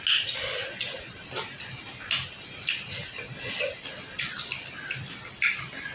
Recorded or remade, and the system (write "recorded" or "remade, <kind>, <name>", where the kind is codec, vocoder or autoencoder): recorded